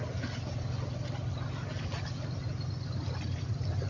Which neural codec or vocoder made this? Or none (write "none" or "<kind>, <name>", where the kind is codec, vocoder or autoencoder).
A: none